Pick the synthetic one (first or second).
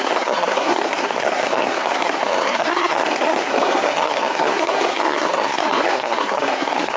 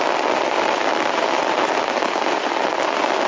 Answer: first